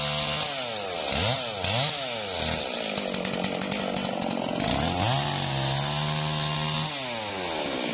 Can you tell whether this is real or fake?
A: real